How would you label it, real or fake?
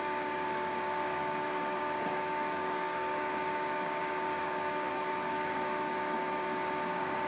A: fake